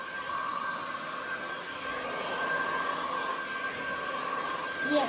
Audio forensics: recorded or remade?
recorded